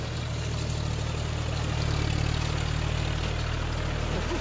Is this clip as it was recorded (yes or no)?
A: yes